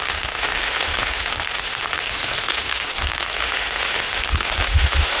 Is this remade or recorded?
remade